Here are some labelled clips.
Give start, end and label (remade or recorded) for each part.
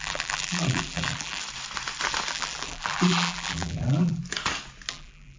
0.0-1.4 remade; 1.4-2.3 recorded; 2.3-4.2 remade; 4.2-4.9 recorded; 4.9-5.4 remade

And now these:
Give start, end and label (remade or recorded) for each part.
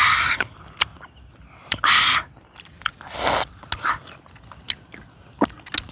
0.0-5.9 recorded